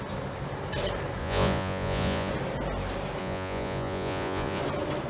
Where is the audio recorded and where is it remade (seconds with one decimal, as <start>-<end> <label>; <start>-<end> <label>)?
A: 0.0-1.2 recorded; 1.2-2.3 remade; 2.3-3.2 recorded; 3.2-4.6 remade; 4.6-5.1 recorded